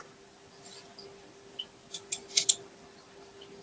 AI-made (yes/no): no